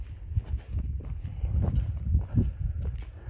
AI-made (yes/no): no